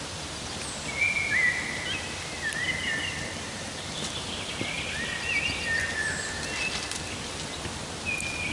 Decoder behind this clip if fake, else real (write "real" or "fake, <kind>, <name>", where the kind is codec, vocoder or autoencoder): real